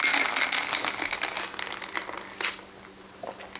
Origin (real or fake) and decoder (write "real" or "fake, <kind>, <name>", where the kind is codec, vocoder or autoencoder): real